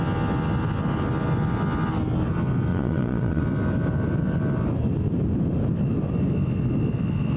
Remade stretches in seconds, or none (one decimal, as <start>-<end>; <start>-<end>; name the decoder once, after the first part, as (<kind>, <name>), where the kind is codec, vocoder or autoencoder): 2.7-3.4 (vocoder, Vocos)